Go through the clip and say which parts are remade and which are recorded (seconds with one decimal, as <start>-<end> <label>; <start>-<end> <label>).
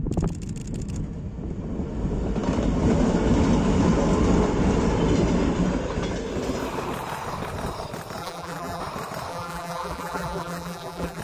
0.0-8.2 recorded; 8.2-8.8 remade; 8.8-9.3 recorded; 9.3-11.2 remade